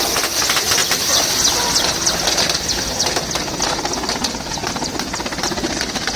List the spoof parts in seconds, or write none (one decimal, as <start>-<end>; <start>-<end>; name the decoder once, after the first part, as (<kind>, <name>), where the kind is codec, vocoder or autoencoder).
none